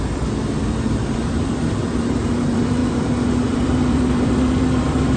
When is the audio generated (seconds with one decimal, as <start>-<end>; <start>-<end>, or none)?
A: 0.0-5.2